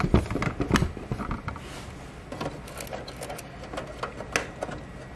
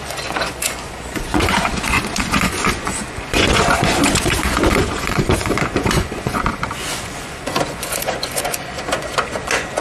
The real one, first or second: first